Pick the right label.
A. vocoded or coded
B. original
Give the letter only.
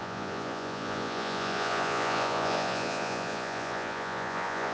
A